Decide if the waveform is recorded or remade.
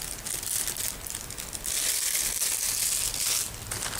recorded